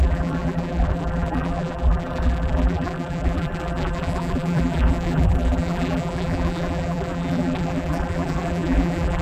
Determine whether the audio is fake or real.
fake